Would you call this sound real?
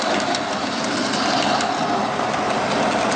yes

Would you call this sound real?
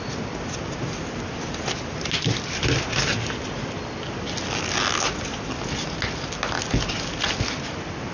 yes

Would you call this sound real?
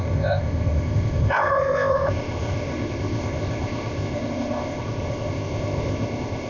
no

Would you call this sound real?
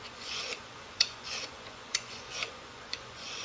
no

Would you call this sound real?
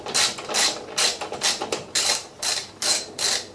yes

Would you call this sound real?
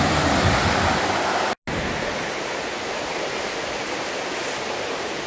yes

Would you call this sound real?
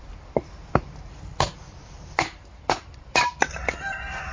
yes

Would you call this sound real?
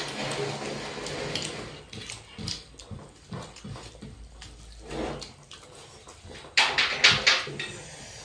yes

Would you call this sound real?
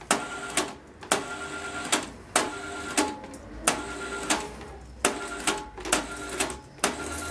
yes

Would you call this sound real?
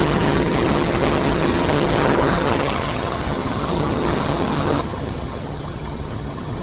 no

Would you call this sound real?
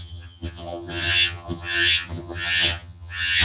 no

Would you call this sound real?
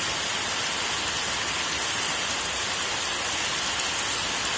yes